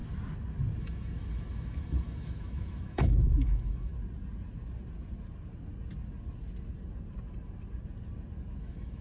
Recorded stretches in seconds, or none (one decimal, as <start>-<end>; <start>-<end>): 0.0-0.8; 3.9-8.6